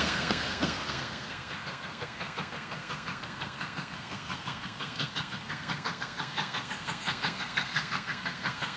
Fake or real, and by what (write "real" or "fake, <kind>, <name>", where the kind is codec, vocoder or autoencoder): fake, codec, SNAC